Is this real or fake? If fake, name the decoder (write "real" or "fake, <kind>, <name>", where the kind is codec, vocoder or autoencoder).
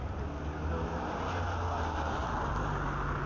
real